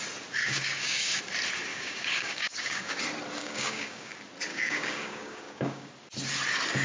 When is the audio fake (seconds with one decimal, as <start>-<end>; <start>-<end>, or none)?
0.4-1.2; 1.7-3.0; 3.4-4.1; 4.5-5.9